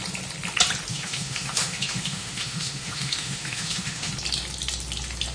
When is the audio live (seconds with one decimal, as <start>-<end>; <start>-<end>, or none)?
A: 0.0-0.9; 4.1-5.3